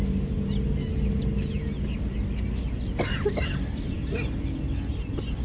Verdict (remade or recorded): recorded